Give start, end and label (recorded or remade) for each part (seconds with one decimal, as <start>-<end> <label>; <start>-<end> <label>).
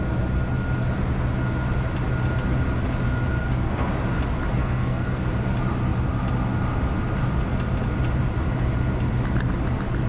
0.0-3.3 recorded; 3.3-3.9 remade; 3.9-4.5 recorded; 4.5-5.2 remade; 5.2-10.1 recorded